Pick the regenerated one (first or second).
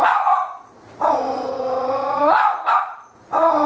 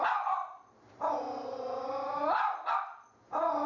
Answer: first